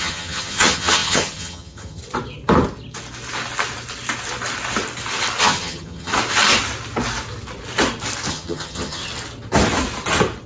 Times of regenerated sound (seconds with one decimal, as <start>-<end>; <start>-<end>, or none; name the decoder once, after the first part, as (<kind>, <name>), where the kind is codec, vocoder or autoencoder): 0.0-2.0 (vocoder, HiFi-GAN); 5.4-6.1; 8.3-9.0